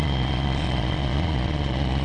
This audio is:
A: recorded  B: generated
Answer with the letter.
B